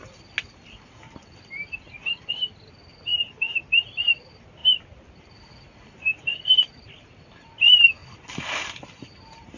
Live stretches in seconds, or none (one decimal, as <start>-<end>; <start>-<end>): 0.0-9.6